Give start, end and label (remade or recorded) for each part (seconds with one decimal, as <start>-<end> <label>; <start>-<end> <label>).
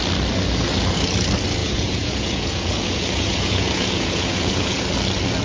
0.0-1.6 recorded; 1.6-4.8 remade; 4.8-5.4 recorded